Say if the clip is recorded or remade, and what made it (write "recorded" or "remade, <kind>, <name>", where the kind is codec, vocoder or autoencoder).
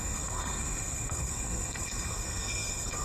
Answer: remade, codec, SNAC